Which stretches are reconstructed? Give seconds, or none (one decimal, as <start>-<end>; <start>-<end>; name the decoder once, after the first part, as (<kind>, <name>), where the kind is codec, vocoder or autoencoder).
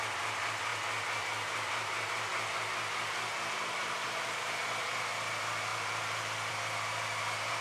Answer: 5.7-6.5 (vocoder, BigVGAN v2)